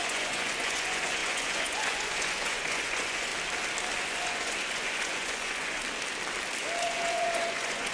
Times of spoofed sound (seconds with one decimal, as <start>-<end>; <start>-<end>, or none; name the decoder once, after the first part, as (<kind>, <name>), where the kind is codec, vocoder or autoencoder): 0.0-3.3 (vocoder, Vocos); 4.0-5.8; 6.8-7.9